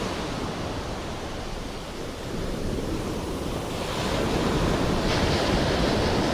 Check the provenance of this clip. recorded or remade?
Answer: recorded